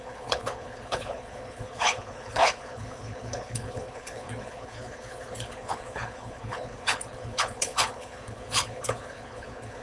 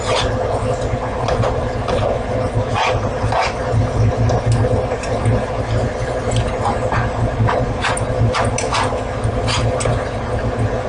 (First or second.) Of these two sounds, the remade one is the first